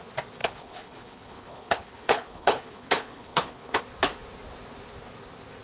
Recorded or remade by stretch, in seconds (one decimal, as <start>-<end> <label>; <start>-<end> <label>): 0.0-0.4 recorded; 0.4-3.8 remade; 3.8-5.6 recorded